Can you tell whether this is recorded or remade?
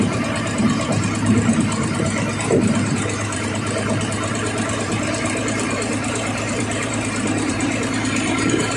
remade